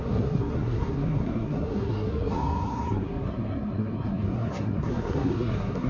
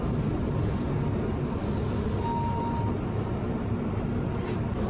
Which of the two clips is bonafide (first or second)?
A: second